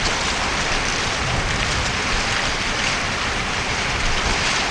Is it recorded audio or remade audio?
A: recorded